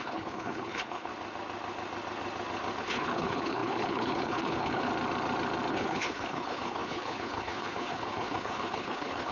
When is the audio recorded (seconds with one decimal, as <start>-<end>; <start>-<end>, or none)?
1.1-2.8; 4.9-5.7